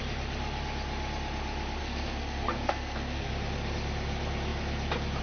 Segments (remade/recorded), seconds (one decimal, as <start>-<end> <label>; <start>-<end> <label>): 0.0-1.8 recorded; 1.8-3.3 remade; 3.3-5.2 recorded